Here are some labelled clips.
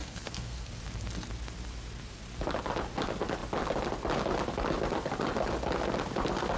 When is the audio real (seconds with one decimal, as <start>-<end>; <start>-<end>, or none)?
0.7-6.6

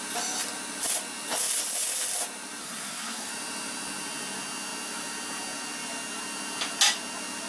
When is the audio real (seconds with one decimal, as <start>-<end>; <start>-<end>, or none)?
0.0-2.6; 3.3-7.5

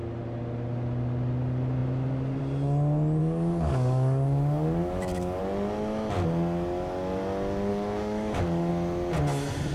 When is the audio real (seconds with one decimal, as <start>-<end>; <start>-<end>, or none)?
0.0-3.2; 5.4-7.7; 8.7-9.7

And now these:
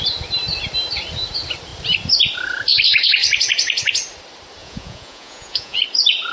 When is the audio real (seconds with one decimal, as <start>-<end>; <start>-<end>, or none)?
0.0-4.6; 5.8-6.3

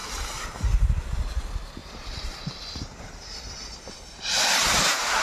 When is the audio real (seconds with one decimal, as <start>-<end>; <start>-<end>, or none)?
0.8-1.8